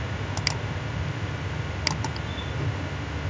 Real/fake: real